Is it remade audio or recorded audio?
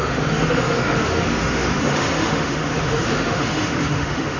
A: remade